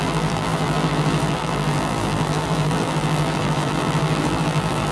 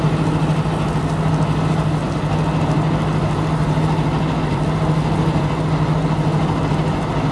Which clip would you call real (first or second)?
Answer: second